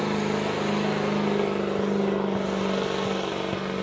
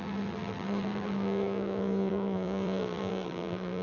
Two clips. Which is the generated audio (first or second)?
second